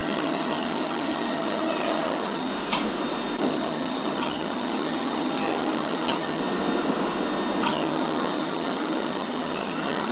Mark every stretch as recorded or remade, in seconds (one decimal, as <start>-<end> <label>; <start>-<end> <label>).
0.0-2.5 remade; 2.5-3.4 recorded; 3.4-6.4 remade; 6.4-7.6 recorded; 7.6-10.1 remade